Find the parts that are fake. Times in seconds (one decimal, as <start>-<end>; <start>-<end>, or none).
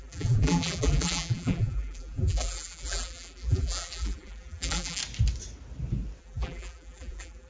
0.0-5.0; 6.2-7.5